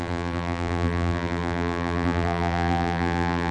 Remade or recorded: remade